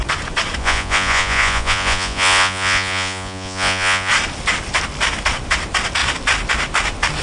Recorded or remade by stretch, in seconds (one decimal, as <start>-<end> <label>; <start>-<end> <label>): 0.0-0.6 recorded; 0.6-4.1 remade; 4.1-7.2 recorded